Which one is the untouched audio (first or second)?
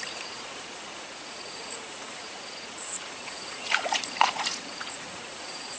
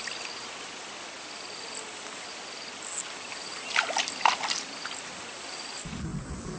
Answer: second